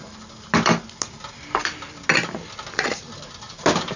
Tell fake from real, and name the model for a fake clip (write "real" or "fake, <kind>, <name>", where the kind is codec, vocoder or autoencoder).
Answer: real